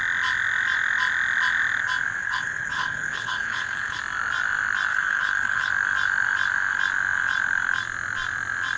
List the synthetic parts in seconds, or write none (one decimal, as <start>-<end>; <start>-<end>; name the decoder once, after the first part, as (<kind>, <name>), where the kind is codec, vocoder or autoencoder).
2.2-4.0 (codec, HILCodec); 4.9-5.7